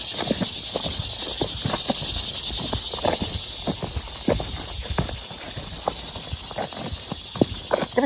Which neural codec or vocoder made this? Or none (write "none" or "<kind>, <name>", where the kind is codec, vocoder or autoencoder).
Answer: none